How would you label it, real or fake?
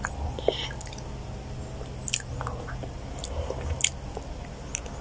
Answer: real